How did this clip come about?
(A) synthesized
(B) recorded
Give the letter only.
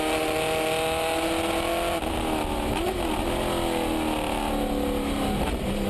B